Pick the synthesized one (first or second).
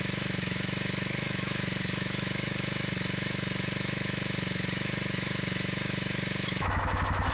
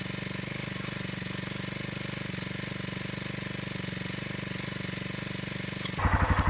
first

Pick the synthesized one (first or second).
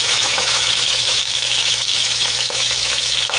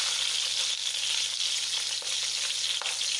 first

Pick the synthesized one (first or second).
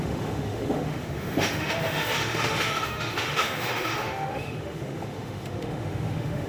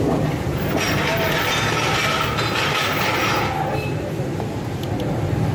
first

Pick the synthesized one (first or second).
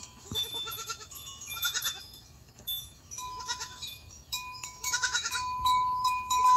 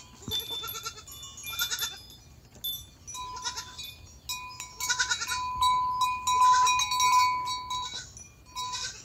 first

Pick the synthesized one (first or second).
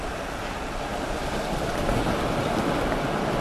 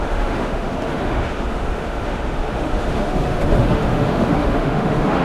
second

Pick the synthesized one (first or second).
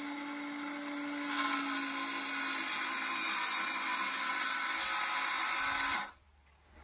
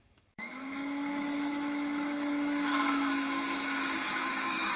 second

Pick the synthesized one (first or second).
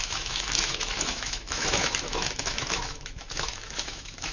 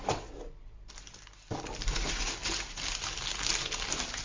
first